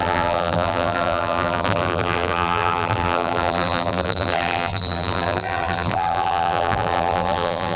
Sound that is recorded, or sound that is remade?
remade